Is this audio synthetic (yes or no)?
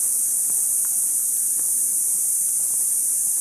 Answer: no